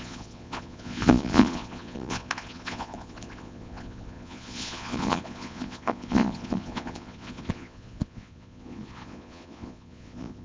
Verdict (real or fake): fake